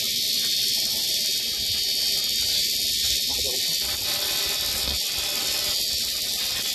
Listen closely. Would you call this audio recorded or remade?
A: recorded